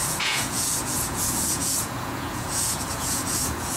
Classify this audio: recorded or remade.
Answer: remade